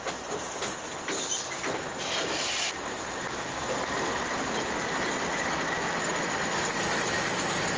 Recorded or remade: recorded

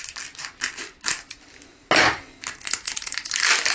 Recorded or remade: recorded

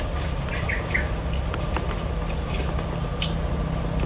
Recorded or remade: recorded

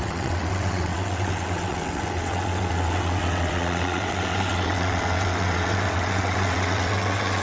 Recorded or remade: remade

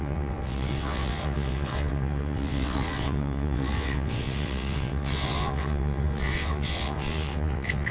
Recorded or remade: remade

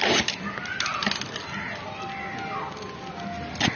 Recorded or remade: recorded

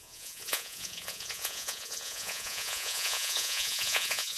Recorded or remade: remade